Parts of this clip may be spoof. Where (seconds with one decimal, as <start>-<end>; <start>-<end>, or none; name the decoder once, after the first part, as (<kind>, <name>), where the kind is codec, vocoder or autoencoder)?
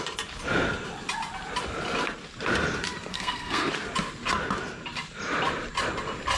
3.1-3.7 (codec, SNAC)